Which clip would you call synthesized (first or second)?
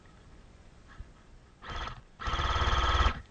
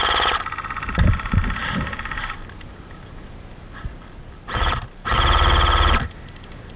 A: first